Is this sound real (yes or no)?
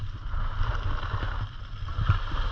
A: yes